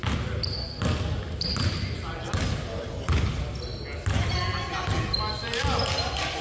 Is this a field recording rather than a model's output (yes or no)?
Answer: yes